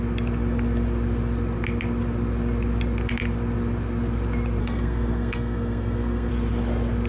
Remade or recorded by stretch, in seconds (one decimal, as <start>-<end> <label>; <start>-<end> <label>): 0.0-4.6 recorded; 4.6-6.3 remade; 6.3-7.1 recorded